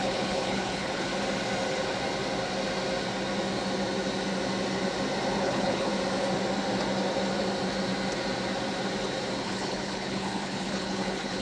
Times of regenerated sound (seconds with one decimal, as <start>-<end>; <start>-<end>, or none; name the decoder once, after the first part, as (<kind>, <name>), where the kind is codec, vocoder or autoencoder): 0.0-1.1 (codec, HILCodec); 5.4-5.9; 9.4-11.4